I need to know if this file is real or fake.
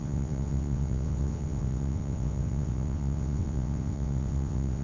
fake